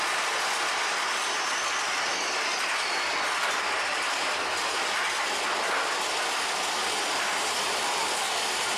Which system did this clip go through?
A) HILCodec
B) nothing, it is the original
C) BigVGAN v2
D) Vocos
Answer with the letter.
B